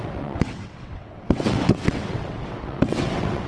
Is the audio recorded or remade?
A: remade